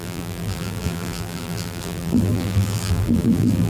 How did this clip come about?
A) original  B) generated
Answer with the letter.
B